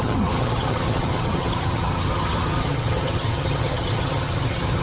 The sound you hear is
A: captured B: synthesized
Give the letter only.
B